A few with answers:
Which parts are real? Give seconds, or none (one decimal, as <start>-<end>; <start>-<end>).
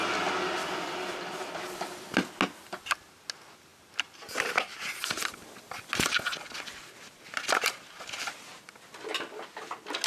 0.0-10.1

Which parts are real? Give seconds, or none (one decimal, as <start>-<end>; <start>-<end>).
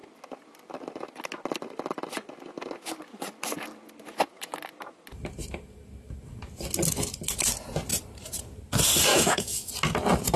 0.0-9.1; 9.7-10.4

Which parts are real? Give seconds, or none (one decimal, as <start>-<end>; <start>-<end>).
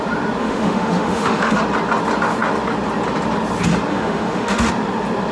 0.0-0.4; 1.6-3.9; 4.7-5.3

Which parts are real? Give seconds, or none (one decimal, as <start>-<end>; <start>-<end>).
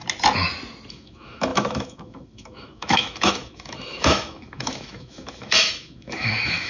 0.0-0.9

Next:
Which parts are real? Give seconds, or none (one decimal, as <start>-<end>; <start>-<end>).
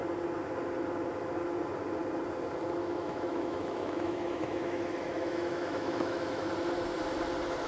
0.0-2.8; 6.5-7.7